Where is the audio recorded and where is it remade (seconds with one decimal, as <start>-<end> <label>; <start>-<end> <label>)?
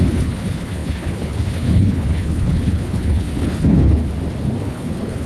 0.0-4.0 remade; 4.0-4.6 recorded; 4.6-5.3 remade